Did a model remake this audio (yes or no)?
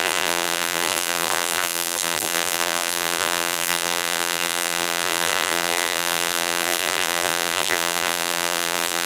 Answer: yes